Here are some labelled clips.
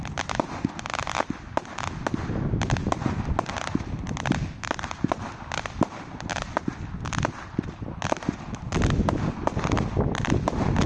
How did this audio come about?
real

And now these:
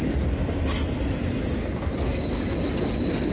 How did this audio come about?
real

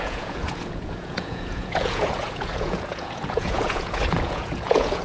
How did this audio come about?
fake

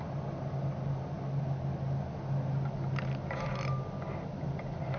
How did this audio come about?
real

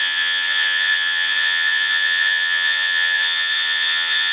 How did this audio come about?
fake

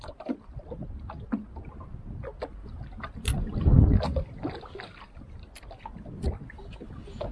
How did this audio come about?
real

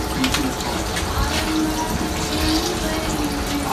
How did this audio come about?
real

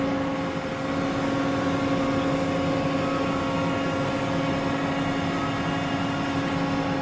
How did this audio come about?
real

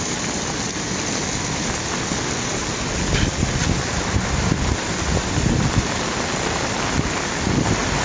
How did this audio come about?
real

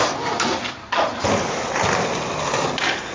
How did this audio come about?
real